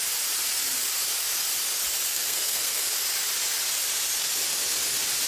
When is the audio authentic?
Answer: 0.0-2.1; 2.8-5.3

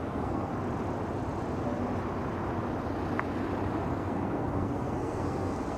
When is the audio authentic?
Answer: 0.5-3.9

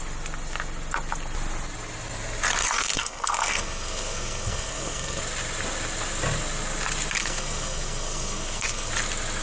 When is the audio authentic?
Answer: 0.0-2.6; 5.2-7.2; 8.9-9.4

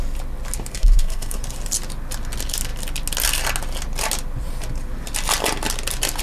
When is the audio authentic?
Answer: 0.0-0.7; 1.4-6.2

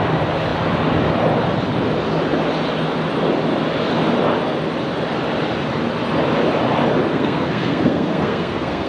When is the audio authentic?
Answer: 0.0-7.1